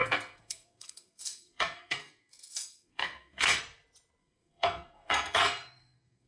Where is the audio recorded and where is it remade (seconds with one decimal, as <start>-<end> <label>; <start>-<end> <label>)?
0.0-3.6 remade; 3.6-4.2 recorded; 4.2-6.3 remade

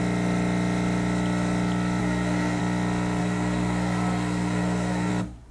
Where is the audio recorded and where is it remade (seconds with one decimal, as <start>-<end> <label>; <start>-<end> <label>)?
0.0-2.0 recorded; 2.0-2.6 remade; 2.6-3.2 recorded; 3.2-5.1 remade; 5.1-5.5 recorded

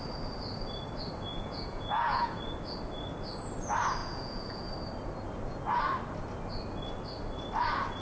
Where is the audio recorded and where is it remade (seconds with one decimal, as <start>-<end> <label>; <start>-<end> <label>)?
0.0-1.3 recorded; 1.3-2.4 remade; 2.4-4.0 recorded; 4.0-4.7 remade; 4.7-8.0 recorded

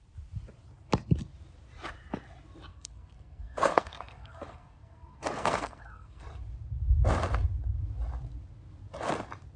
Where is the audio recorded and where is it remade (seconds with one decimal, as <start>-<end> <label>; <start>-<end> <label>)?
0.0-2.7 recorded; 2.7-6.4 remade; 6.4-9.6 recorded

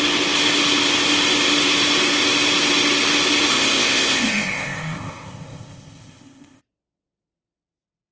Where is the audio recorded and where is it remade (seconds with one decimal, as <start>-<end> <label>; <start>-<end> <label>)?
0.0-3.5 recorded; 3.5-6.6 remade; 6.6-8.1 recorded

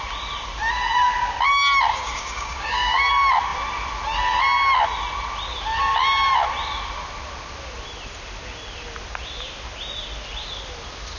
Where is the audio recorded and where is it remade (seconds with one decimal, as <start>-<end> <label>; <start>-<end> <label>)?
0.0-1.9 recorded; 1.9-3.1 remade; 3.1-11.2 recorded

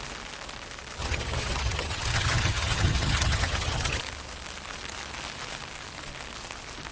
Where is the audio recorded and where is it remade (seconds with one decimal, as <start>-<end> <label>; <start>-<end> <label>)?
0.0-1.0 recorded; 1.0-4.0 remade; 4.0-6.9 recorded

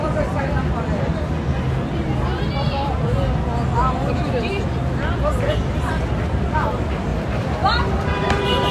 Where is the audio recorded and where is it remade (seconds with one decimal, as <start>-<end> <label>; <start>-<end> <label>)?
0.0-7.1 recorded; 7.1-8.7 remade